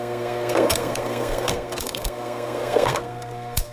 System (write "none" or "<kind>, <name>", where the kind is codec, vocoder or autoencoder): codec, SNAC